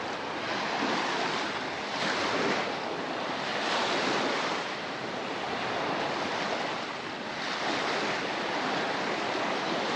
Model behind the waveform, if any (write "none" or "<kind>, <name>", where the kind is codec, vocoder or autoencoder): none